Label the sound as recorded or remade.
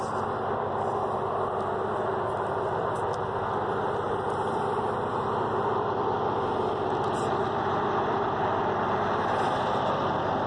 recorded